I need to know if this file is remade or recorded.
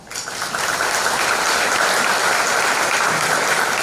remade